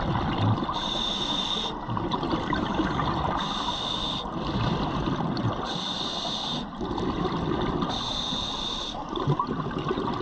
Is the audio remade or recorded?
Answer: recorded